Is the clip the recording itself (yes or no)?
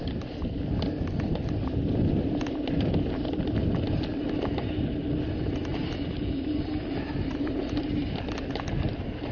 yes